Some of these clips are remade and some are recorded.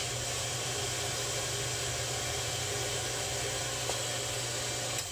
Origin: recorded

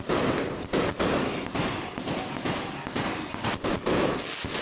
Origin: remade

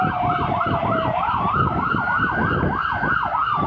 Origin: remade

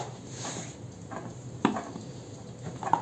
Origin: remade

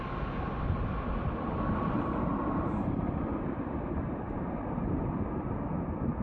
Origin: recorded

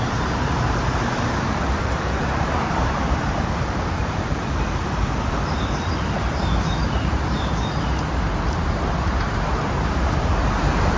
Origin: remade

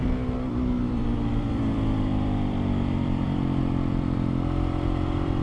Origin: remade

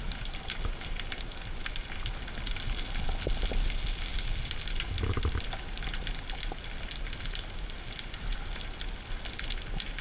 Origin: recorded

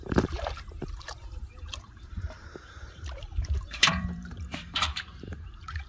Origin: remade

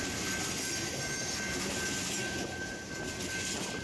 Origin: recorded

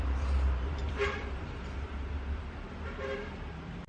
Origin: remade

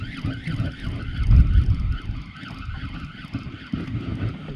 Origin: recorded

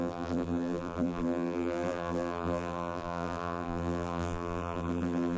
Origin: remade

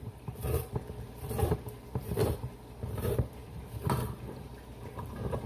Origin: remade